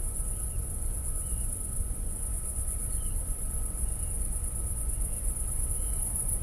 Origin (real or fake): fake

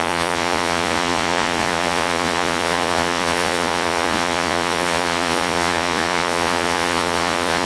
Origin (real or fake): fake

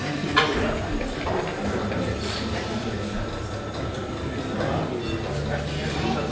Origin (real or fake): real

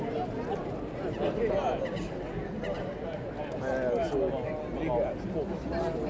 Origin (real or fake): real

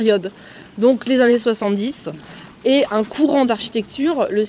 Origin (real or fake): fake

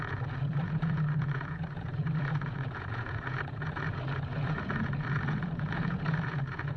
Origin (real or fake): fake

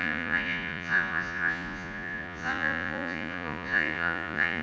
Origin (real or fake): fake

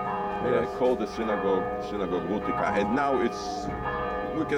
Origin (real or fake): fake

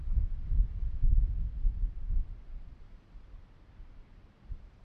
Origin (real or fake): real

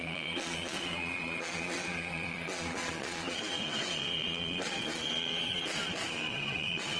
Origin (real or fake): fake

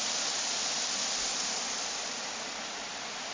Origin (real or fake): real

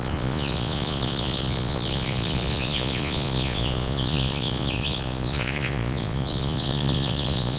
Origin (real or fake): fake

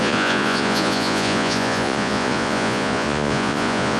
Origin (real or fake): fake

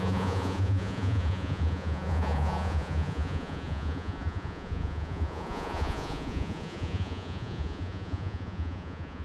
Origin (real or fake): fake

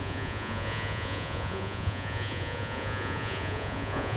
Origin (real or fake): fake